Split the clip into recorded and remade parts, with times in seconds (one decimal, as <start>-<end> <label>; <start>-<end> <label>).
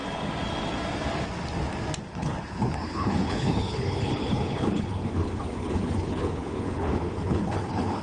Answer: 0.0-2.0 recorded; 2.0-8.0 remade